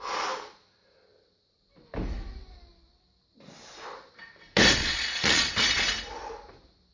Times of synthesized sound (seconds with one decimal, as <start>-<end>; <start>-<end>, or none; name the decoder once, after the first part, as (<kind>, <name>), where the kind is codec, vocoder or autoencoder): 4.8-5.5 (vocoder, Vocos)